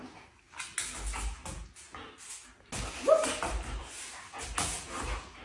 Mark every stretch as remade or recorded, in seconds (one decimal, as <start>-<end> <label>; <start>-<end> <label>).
0.0-3.2 recorded; 3.2-4.0 remade; 4.0-5.4 recorded